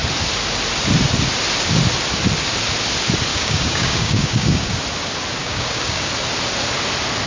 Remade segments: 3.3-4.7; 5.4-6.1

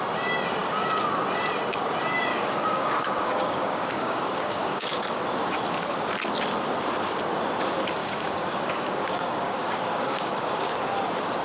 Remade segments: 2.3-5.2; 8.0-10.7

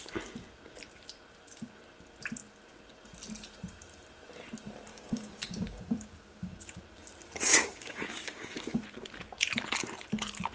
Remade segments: 4.9-6.8; 7.5-8.8

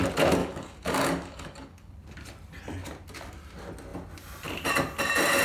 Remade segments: 0.4-1.9